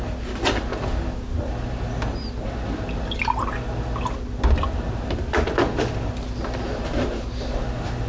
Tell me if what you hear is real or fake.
real